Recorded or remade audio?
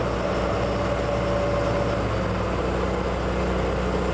recorded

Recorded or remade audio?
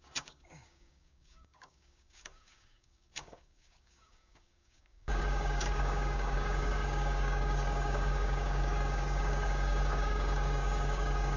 remade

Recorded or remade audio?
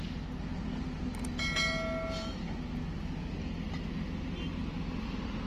recorded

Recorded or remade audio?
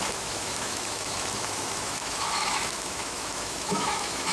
remade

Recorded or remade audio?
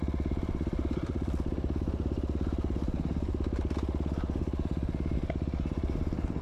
recorded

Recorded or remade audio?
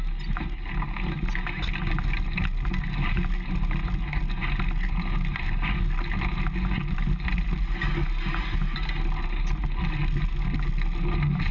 recorded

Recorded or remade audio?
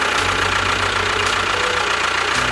recorded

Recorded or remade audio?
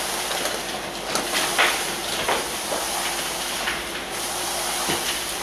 remade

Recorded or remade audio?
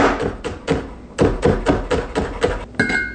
recorded